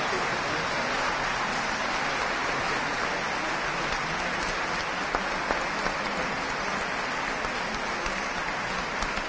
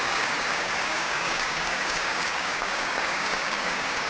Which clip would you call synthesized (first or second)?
second